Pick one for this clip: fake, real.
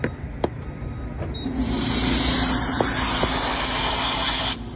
real